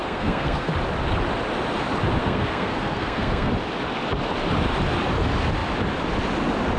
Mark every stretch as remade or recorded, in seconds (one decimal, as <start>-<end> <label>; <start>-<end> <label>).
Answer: 0.0-0.7 remade; 0.7-2.2 recorded; 2.2-3.5 remade; 3.5-6.8 recorded